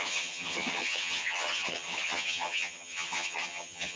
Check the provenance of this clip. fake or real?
fake